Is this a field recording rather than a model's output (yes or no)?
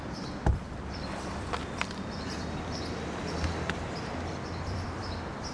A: no